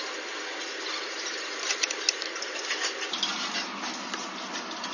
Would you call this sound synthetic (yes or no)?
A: no